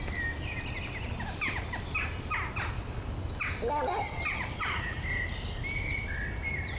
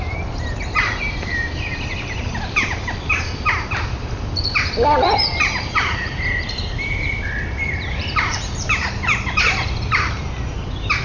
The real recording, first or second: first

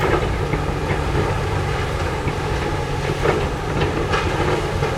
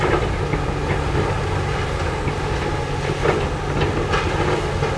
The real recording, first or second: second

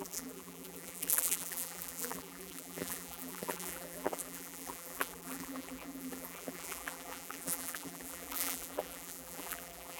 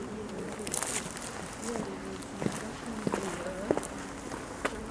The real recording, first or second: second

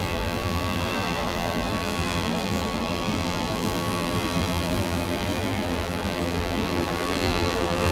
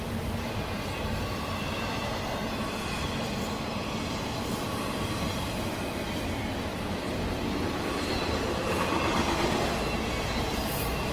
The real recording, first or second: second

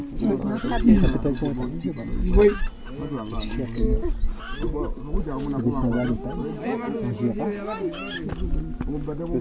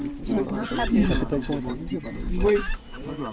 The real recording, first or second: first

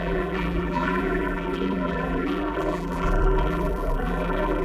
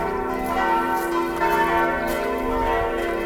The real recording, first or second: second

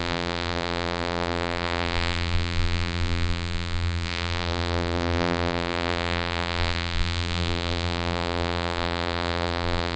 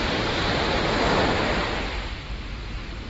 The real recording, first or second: second